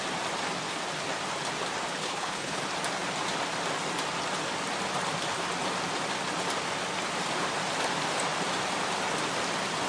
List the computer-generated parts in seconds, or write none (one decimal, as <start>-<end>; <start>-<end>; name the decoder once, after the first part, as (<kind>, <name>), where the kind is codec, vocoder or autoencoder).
2.0-2.6 (codec, HILCodec)